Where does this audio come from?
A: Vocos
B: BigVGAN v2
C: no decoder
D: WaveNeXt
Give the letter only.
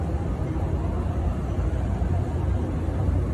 C